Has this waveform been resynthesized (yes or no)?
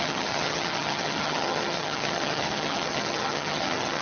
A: yes